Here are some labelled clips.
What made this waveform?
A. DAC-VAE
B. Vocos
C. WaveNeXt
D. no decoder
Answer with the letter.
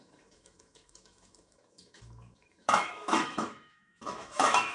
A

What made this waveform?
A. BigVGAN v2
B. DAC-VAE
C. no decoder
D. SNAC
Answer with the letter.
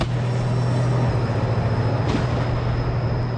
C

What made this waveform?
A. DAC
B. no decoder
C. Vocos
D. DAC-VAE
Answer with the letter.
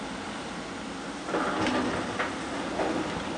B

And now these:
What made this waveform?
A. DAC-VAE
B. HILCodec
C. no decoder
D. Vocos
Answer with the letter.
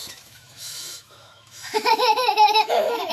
A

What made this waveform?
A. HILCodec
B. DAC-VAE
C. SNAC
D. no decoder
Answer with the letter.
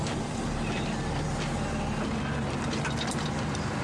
D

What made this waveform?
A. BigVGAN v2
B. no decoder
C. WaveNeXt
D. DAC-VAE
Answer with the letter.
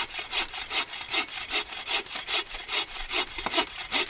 B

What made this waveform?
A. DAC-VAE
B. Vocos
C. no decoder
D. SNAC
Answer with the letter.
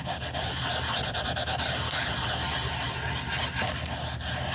C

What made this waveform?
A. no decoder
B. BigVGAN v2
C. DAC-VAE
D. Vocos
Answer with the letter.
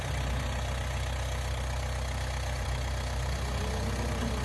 A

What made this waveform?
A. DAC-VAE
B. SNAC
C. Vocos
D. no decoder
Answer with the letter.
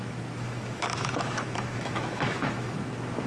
A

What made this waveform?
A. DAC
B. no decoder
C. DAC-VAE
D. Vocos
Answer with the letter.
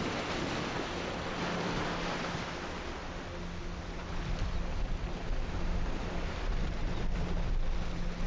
B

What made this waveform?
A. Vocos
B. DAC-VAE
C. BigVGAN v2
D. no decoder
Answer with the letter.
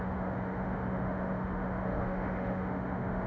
B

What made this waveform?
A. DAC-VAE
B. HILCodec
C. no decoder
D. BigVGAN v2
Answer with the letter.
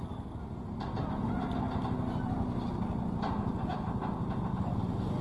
C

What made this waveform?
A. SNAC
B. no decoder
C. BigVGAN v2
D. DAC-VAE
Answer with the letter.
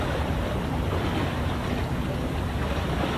B